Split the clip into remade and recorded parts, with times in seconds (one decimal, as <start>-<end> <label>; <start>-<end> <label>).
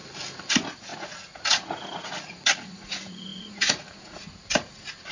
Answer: 0.0-0.5 recorded; 0.5-5.1 remade